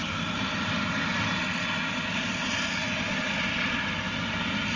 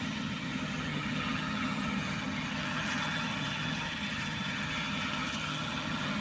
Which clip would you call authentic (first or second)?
first